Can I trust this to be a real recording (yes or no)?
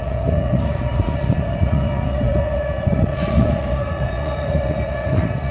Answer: no